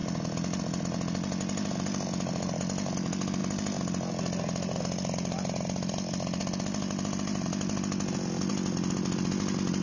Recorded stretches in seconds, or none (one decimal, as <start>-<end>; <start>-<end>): 0.0-9.8